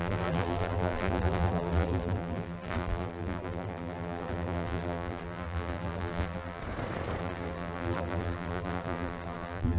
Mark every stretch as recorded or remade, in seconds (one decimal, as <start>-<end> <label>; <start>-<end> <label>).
0.0-6.6 remade; 6.6-7.2 recorded; 7.2-9.8 remade